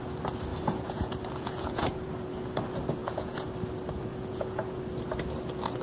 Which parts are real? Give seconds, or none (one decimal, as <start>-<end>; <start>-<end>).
0.0-0.5; 2.1-3.0; 3.5-4.1; 4.8-5.8